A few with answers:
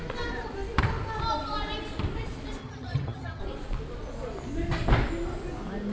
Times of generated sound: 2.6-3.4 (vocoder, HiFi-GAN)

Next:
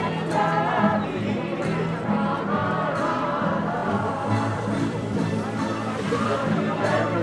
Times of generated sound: 2.6-3.4 (vocoder, BigVGAN v2); 3.8-6.6

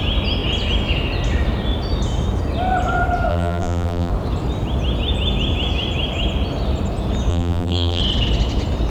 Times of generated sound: 3.3-4.1 (vocoder, BigVGAN v2); 7.3-8.0

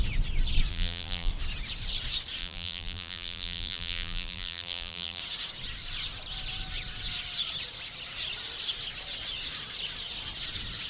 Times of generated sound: 0.7-1.3 (vocoder, BigVGAN v2); 2.4-5.2

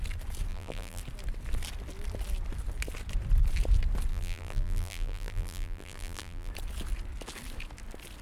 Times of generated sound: 0.5-1.0 (vocoder, BigVGAN v2); 4.1-6.5

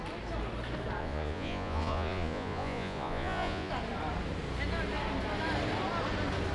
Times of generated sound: 1.0-3.7 (vocoder, Vocos)

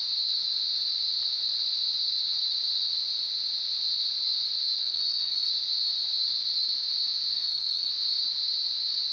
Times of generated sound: 4.8-5.5 (codec, SNAC); 7.3-7.9